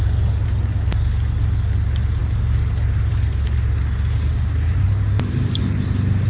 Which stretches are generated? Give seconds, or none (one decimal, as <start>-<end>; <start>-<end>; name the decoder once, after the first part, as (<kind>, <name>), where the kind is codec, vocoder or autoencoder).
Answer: none

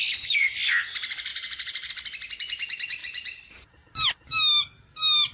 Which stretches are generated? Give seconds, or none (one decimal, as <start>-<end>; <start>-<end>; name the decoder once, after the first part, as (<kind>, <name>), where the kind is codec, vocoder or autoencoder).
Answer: 1.3-1.9 (vocoder, BigVGAN v2); 3.0-3.7

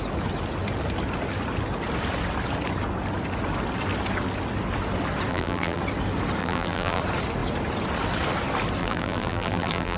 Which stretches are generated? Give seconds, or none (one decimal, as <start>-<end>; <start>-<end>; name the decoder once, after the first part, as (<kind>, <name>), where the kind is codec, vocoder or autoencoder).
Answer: 5.3-5.8 (vocoder, BigVGAN v2); 6.4-7.0; 8.8-10.0

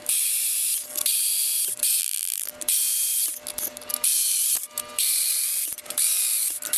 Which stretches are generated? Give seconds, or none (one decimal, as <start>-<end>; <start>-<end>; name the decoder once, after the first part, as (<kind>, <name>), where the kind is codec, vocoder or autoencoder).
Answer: 2.0-2.5 (vocoder, BigVGAN v2)

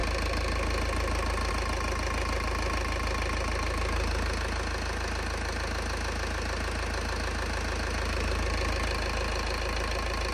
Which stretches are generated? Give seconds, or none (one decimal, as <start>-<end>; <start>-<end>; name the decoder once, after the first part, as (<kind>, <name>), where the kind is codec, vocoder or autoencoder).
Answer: none

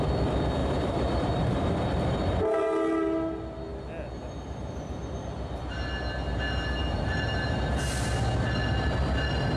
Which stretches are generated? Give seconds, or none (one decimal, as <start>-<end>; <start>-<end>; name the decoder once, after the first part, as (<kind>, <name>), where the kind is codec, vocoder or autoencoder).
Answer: 0.6-2.1 (vocoder, BigVGAN v2); 6.8-7.9

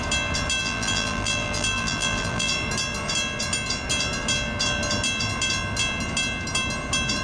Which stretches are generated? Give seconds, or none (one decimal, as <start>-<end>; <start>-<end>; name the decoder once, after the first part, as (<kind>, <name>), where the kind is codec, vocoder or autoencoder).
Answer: 0.6-2.5 (vocoder, BigVGAN v2)